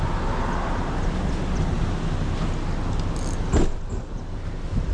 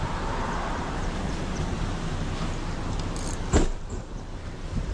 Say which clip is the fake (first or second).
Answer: second